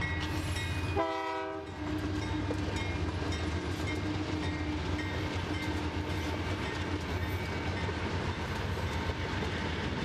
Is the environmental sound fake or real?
real